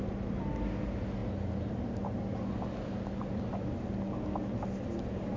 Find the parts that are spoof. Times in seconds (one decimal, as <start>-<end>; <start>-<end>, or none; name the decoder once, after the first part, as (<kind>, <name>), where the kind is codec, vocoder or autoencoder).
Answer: none